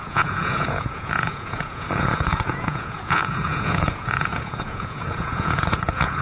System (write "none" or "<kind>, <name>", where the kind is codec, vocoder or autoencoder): vocoder, Vocos